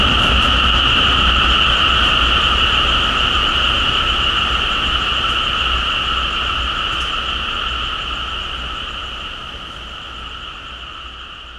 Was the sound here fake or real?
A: real